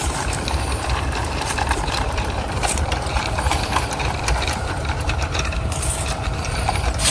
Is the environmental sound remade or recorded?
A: remade